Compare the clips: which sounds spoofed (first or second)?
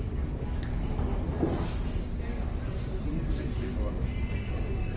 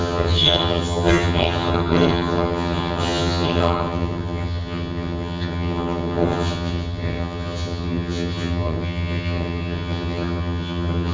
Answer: second